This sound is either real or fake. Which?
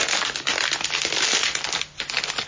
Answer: real